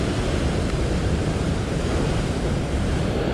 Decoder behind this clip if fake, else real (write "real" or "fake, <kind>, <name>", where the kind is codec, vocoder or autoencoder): real